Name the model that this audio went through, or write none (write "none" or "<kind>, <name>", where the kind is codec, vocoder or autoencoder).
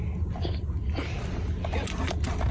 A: none